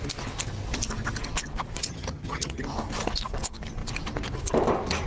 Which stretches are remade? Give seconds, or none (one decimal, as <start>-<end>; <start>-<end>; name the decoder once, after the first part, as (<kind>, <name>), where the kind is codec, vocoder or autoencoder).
1.8-2.6 (vocoder, HiFi-GAN)

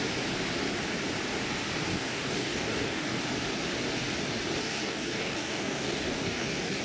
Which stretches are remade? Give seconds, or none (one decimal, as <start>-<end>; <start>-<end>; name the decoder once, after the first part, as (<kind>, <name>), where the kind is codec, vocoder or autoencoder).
1.9-3.2 (codec, DAC); 4.6-6.8

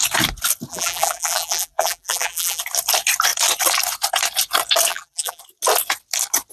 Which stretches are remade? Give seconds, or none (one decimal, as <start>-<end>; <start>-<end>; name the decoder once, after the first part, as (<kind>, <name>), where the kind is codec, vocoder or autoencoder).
0.7-2.6 (vocoder, BigVGAN v2); 4.9-5.4

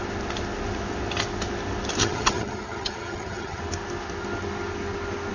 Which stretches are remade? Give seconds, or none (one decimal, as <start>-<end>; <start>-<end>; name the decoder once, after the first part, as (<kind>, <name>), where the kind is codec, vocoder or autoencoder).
2.0-3.6 (vocoder, HiFi-GAN)